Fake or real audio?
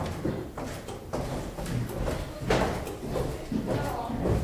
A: real